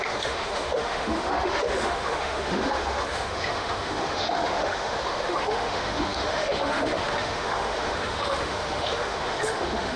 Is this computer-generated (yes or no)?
yes